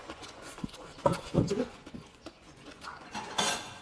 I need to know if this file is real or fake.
fake